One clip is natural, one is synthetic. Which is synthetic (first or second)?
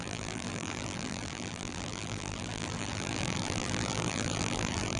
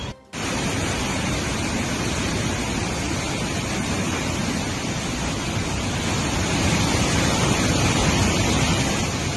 first